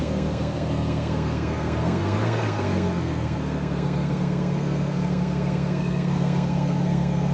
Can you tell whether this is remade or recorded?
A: remade